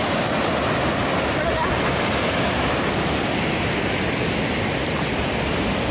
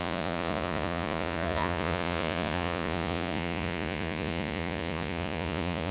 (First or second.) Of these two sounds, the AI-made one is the second